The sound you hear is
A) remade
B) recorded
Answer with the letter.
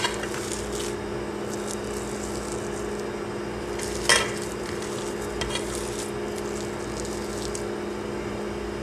B